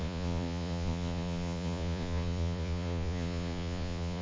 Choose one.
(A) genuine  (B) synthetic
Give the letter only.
B